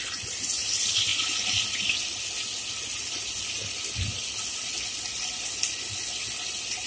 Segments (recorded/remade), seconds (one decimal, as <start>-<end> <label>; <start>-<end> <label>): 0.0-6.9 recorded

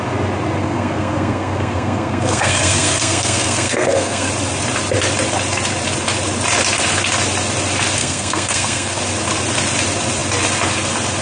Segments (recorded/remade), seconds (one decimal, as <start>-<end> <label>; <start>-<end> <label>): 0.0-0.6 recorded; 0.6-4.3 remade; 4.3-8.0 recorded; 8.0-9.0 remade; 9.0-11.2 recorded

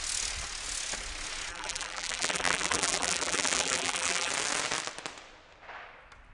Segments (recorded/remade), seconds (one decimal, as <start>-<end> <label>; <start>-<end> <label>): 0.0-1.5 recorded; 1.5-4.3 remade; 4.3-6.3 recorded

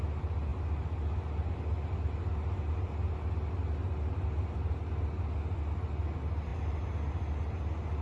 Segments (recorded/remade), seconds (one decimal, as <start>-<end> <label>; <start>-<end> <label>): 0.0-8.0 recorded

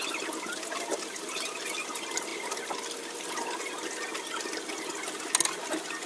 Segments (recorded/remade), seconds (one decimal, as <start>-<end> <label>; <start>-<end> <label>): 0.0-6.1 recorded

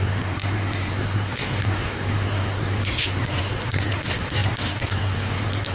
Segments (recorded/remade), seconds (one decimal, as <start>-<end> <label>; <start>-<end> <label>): 0.0-5.7 remade